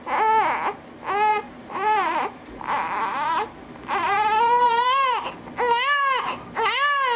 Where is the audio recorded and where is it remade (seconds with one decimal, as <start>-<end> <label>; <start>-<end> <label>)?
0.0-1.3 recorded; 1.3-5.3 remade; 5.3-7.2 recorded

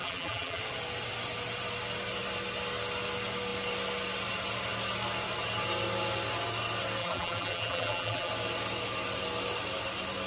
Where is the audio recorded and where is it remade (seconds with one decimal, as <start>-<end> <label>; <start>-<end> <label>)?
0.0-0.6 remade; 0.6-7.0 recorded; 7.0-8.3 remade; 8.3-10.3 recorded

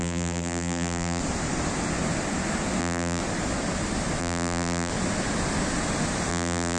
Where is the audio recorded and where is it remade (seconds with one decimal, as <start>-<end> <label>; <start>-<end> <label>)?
0.0-1.2 remade; 1.2-2.8 recorded; 2.8-3.2 remade; 3.2-4.2 recorded; 4.2-4.9 remade; 4.9-6.3 recorded; 6.3-6.8 remade